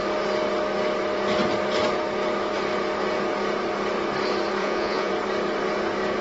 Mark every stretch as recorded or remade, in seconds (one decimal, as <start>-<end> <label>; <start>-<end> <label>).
0.0-4.6 recorded; 4.6-5.1 remade; 5.1-6.2 recorded